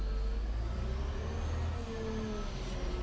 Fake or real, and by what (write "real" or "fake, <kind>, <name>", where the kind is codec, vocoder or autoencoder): real